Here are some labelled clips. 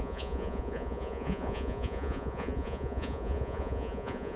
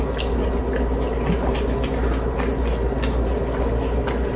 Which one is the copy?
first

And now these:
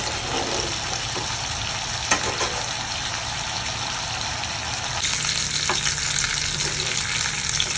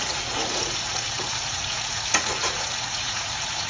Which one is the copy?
second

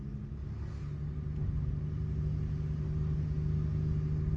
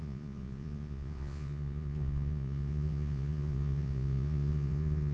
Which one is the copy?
second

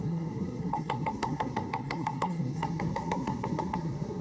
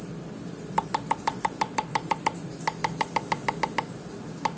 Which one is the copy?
first